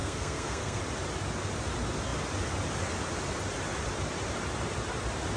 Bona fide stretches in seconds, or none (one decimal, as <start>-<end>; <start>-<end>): 0.8-5.4